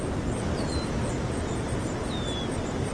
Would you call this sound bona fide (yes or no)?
yes